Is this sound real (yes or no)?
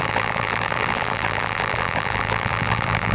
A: no